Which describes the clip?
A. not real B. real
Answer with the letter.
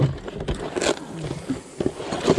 B